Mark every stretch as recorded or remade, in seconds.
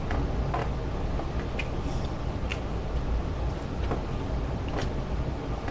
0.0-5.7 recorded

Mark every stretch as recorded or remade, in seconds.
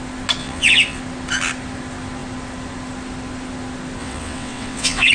0.0-0.4 recorded; 0.4-1.0 remade; 1.0-4.0 recorded; 4.0-5.1 remade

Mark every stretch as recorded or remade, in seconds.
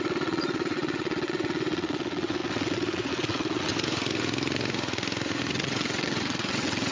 0.0-3.7 remade; 3.7-5.5 recorded; 5.5-6.9 remade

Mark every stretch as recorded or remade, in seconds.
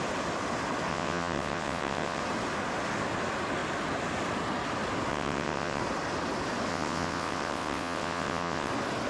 0.0-0.9 recorded; 0.9-2.2 remade; 2.2-5.1 recorded; 5.1-5.8 remade; 5.8-6.7 recorded; 6.7-8.7 remade; 8.7-9.1 recorded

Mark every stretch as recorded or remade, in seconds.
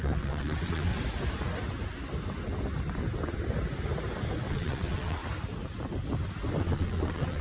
0.0-0.9 remade; 0.9-4.5 recorded; 4.5-5.2 remade; 5.2-6.6 recorded; 6.6-7.4 remade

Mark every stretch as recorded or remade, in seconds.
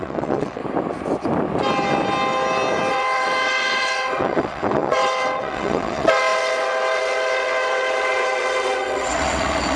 0.0-0.6 remade; 0.6-2.9 recorded; 2.9-9.8 remade